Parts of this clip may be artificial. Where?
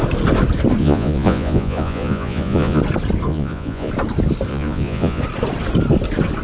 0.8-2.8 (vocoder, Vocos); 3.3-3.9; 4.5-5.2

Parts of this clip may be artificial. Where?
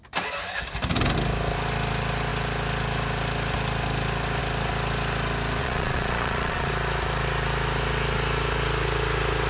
5.6-6.7 (vocoder, Vocos)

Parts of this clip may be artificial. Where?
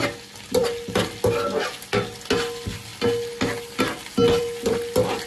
none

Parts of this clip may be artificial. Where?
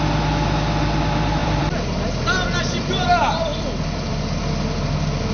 1.4-4.4 (vocoder, BigVGAN v2)